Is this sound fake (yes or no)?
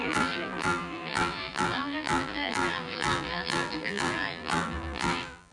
yes